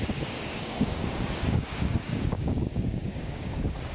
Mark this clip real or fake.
fake